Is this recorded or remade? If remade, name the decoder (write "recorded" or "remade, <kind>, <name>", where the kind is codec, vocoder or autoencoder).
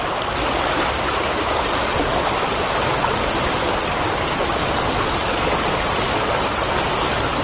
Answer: recorded